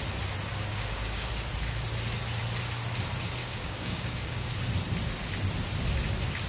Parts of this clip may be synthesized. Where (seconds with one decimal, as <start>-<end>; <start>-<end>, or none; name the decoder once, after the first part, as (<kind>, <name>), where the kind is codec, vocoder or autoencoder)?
0.7-1.3 (codec, DAC); 3.4-4.5

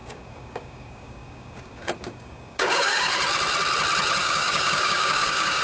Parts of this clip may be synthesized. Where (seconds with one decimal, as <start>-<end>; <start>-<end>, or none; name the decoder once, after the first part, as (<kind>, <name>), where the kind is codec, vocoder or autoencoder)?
0.0-3.1 (codec, DAC); 4.2-5.6